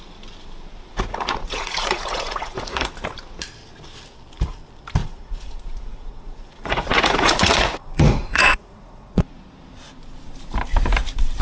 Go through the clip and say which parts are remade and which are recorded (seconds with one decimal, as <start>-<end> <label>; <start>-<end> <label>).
0.0-0.9 recorded; 0.9-2.9 remade; 2.9-5.0 recorded; 5.0-9.4 remade; 9.4-11.4 recorded